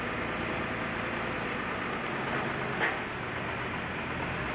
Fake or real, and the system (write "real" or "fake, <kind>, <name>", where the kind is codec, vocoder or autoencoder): real